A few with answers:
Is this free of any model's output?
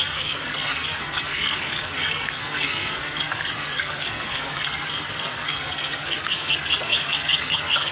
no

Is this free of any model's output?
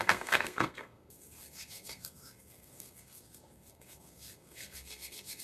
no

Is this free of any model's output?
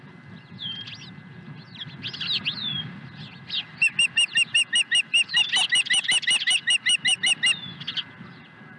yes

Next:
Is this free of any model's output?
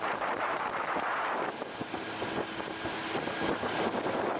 yes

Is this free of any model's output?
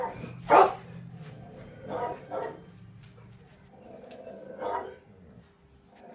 yes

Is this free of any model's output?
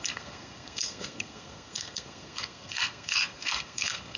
no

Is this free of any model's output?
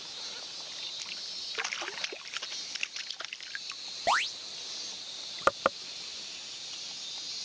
yes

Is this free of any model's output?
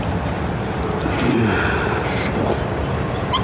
yes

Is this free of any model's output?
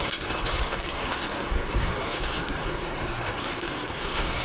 no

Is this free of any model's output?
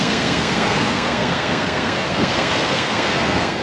no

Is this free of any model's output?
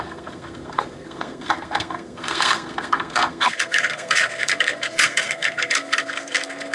no